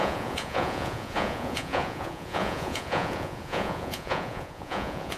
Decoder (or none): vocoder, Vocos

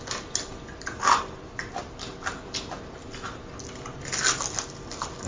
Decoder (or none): none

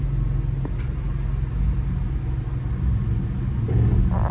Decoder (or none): none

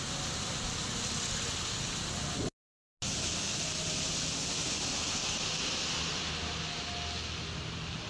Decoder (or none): none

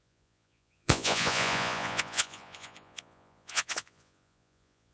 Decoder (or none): vocoder, Vocos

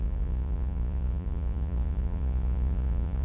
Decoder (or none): vocoder, Vocos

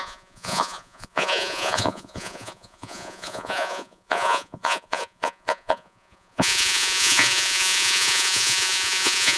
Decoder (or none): vocoder, Vocos